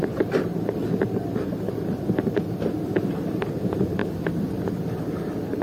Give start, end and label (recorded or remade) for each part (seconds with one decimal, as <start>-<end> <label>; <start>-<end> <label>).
0.0-5.6 recorded